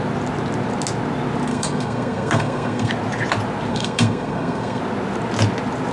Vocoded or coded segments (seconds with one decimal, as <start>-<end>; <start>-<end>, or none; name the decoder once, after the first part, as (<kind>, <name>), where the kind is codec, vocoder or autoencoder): 1.5-2.9 (codec, SNAC); 3.7-4.8